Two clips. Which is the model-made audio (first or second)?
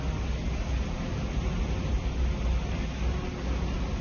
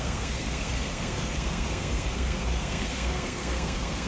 second